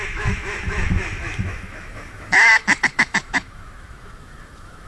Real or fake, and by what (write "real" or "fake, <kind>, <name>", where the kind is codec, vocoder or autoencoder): fake, autoencoder, DAC-VAE